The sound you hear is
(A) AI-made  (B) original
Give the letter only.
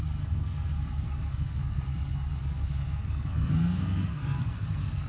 A